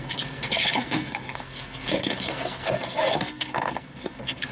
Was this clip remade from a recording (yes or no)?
yes